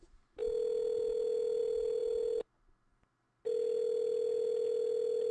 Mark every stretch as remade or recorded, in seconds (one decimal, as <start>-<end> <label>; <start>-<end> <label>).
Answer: 0.0-5.3 recorded